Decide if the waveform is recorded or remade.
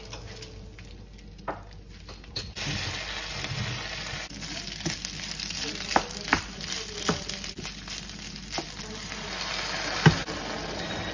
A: recorded